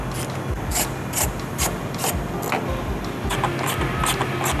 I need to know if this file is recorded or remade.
recorded